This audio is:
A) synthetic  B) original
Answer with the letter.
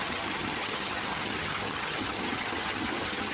A